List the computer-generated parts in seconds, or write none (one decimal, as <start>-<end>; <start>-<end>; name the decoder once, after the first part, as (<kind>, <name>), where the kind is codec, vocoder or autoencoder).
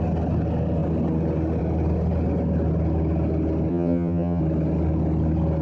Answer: 3.7-4.4 (vocoder, HiFi-GAN)